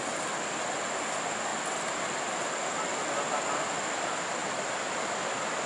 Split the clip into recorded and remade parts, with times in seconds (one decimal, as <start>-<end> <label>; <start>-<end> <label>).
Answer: 0.0-4.4 recorded; 4.4-5.7 remade